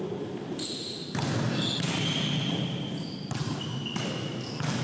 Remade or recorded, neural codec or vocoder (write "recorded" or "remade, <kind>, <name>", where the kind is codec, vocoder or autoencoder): recorded